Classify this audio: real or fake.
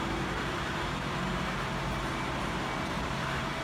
fake